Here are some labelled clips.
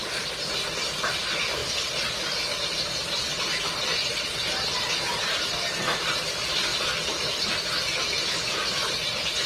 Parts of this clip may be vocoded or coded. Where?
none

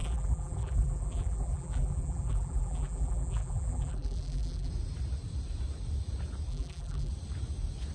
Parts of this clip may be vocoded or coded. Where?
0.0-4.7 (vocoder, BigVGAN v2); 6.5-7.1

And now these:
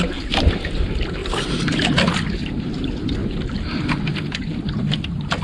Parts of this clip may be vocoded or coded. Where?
3.2-3.8 (vocoder, BigVGAN v2)